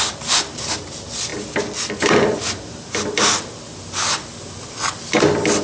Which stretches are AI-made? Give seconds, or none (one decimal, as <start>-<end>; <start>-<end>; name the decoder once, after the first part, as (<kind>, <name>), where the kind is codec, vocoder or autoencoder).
none